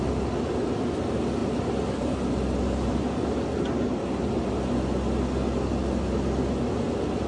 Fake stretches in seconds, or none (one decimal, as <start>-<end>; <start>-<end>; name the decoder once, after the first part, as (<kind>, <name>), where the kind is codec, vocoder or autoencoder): none